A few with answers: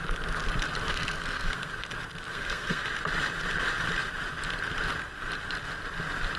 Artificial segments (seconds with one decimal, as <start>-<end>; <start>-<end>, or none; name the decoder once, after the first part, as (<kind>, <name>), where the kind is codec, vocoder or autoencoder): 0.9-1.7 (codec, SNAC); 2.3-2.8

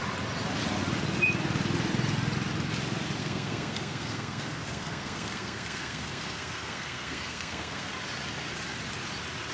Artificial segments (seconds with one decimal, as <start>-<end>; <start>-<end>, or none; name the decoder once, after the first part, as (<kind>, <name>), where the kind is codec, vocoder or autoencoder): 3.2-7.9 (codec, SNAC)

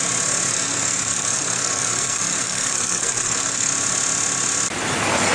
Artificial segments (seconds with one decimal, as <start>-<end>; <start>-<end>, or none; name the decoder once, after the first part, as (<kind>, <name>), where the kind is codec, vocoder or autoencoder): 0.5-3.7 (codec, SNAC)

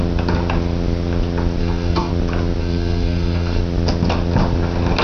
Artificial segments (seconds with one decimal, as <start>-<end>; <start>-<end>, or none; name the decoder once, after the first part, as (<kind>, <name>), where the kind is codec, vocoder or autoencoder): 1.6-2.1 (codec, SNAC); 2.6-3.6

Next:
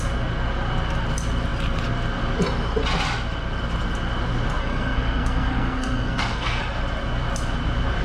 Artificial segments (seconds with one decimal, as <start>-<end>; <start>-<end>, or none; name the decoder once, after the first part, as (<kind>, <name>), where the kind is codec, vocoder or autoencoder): 4.6-6.6 (codec, SNAC)

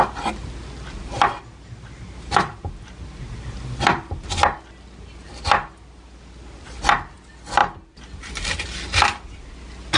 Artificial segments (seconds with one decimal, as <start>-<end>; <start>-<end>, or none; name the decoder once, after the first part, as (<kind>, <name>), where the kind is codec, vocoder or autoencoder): none